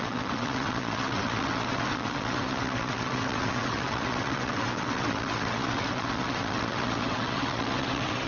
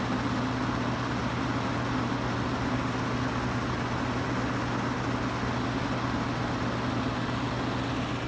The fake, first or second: first